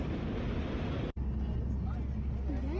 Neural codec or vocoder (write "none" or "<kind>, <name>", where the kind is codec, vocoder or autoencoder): none